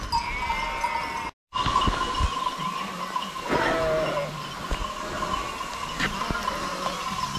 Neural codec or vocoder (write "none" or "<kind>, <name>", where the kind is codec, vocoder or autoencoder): none